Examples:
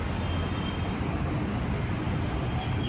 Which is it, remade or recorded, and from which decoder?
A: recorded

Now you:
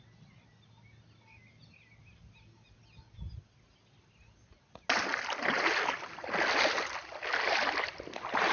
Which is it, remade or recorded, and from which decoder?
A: recorded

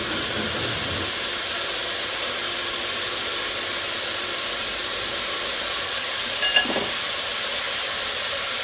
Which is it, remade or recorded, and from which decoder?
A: remade, vocoder, BigVGAN v2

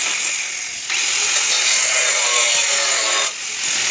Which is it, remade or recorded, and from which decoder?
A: recorded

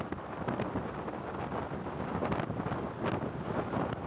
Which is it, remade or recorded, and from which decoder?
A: recorded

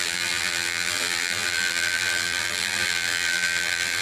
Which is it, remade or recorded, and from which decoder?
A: remade, vocoder, BigVGAN v2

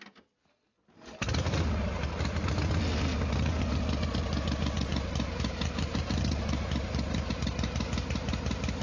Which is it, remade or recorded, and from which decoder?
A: recorded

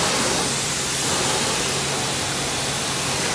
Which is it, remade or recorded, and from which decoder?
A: recorded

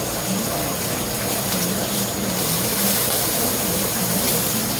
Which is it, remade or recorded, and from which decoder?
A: remade, vocoder, BigVGAN v2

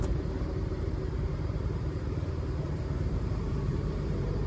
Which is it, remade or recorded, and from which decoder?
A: remade, vocoder, BigVGAN v2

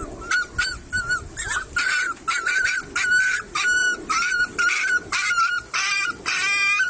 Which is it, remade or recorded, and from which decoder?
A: remade, vocoder, BigVGAN v2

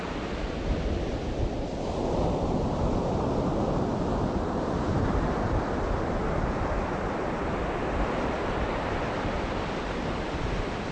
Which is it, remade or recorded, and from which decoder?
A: recorded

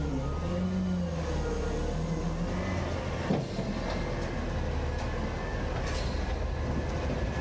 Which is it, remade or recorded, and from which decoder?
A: recorded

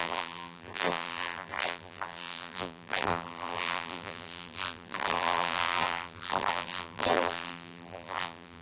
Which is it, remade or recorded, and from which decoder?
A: remade, vocoder, BigVGAN v2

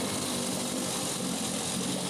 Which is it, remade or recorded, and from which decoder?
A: recorded